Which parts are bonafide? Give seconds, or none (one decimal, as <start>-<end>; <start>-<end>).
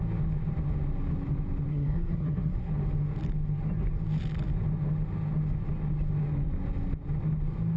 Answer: 0.0-1.7; 2.7-7.8